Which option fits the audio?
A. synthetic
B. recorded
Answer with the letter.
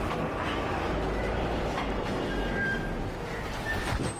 B